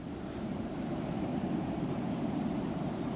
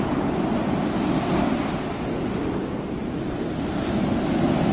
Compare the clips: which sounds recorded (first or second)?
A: second